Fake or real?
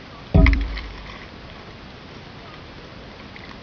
fake